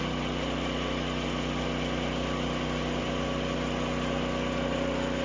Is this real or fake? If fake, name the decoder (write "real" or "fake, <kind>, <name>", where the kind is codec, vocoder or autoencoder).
real